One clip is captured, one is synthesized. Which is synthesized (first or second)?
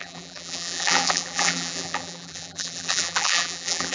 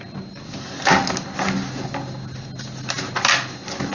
first